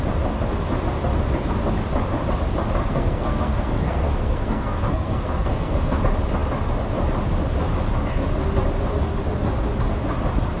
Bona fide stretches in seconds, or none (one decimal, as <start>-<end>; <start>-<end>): 0.0-2.8; 6.0-10.6

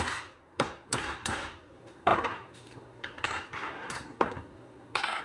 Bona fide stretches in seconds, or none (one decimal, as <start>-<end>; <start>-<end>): none

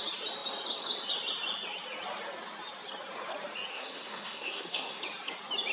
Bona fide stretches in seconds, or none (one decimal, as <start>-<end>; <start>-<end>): 0.0-3.7; 5.0-5.7

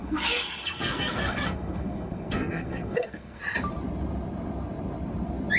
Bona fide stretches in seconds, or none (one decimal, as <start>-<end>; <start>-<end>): 3.4-5.6

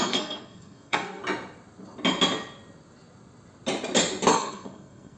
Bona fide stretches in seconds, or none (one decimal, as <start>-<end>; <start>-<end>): 1.2-4.3

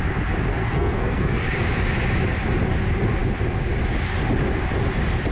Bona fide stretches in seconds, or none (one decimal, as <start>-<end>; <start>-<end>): 0.0-0.5; 1.4-5.3